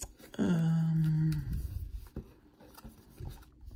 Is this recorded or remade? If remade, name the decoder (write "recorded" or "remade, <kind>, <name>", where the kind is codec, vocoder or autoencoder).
recorded